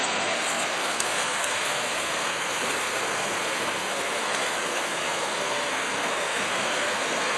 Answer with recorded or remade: remade